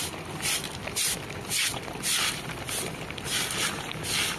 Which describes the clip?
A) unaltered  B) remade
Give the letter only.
A